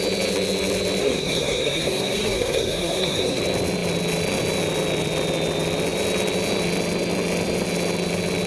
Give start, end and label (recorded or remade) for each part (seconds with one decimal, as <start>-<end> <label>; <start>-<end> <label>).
0.0-1.0 recorded; 1.0-3.4 remade; 3.4-8.5 recorded